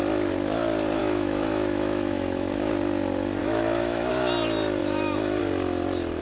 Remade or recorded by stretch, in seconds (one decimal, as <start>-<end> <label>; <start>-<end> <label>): 0.0-1.0 recorded; 1.0-2.7 remade; 2.7-3.4 recorded; 3.4-4.1 remade; 4.1-4.8 recorded; 4.8-5.4 remade; 5.4-6.2 recorded